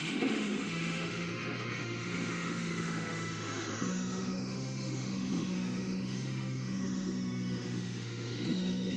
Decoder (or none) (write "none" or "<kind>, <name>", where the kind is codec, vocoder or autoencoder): autoencoder, DAC-VAE